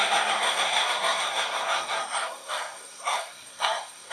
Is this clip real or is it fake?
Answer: fake